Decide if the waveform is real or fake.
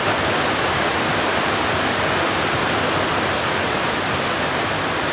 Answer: real